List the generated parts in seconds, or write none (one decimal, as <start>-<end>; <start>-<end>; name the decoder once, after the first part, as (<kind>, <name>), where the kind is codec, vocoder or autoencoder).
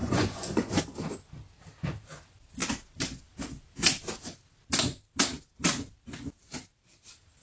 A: 0.0-0.8 (vocoder, Vocos)